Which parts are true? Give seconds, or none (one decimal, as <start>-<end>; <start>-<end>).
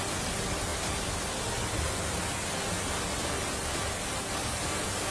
0.0-5.1